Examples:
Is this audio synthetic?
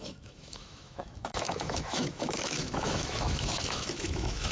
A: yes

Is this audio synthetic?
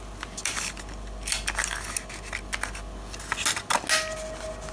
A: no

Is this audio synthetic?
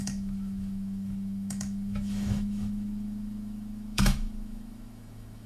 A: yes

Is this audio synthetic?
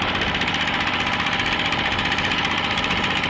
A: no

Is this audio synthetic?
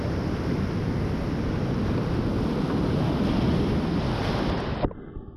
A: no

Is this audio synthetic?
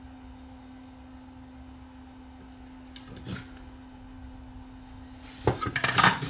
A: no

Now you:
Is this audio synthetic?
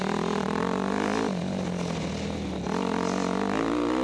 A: no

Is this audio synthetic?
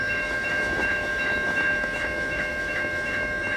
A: yes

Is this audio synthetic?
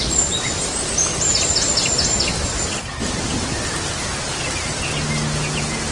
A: no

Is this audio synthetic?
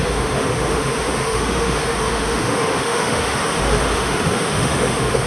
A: yes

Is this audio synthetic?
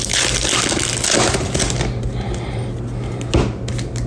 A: no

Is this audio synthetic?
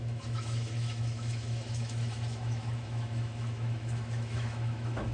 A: yes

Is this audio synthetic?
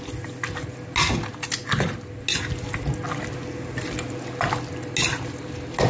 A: no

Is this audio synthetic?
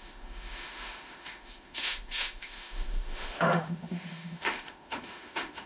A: yes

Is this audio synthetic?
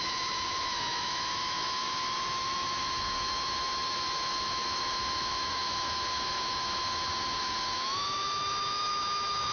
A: yes